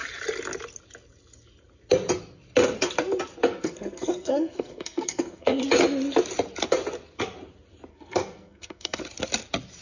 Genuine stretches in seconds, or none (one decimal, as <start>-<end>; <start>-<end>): 0.0-3.5; 5.6-7.9; 9.0-9.8